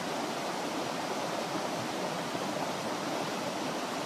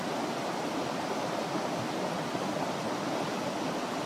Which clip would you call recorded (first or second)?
second